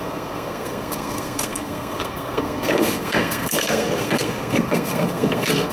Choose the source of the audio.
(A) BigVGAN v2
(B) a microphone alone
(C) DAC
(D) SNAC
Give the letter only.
D